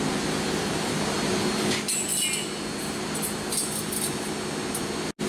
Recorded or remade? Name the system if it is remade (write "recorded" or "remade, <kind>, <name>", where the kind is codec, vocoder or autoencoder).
recorded